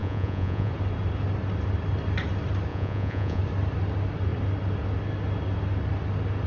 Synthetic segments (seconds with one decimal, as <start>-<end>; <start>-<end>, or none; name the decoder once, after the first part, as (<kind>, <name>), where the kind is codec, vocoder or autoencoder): 0.0-0.7 (vocoder, Vocos); 2.7-3.4